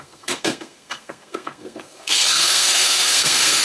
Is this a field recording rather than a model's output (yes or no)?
no